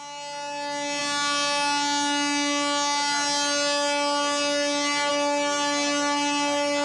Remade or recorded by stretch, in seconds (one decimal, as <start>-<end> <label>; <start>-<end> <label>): 0.0-6.8 recorded